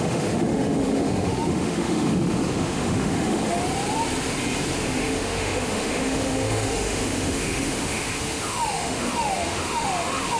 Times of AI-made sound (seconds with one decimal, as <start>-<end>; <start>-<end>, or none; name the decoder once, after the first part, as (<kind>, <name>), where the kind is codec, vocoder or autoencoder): 0.0-3.6 (autoencoder, DAC-VAE); 4.8-10.4